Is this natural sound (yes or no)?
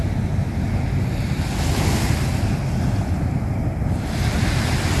yes